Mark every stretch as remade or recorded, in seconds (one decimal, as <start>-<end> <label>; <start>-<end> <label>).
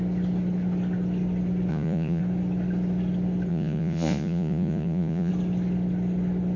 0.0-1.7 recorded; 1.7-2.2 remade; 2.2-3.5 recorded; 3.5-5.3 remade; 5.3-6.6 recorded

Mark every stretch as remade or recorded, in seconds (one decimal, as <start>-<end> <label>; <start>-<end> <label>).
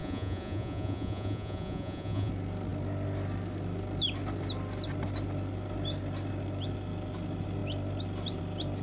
0.0-2.3 remade; 2.3-8.8 recorded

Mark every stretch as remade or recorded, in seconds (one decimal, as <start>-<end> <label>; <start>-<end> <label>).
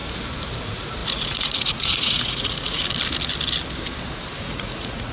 0.0-0.6 recorded; 0.6-2.8 remade; 2.8-4.4 recorded; 4.4-5.1 remade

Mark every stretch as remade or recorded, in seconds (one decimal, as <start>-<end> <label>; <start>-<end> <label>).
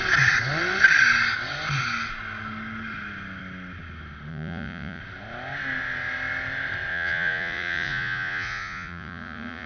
0.0-4.3 recorded; 4.3-5.0 remade; 5.0-6.9 recorded; 6.9-9.7 remade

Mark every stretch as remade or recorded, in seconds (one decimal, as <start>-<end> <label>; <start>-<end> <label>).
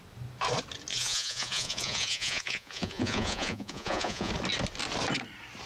0.0-0.9 recorded; 0.9-4.3 remade; 4.3-5.7 recorded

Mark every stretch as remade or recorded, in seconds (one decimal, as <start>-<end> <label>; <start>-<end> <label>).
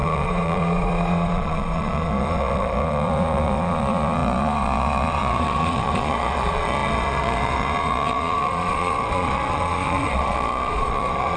0.0-11.4 remade